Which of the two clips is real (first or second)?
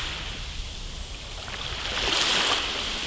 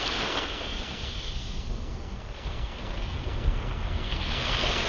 first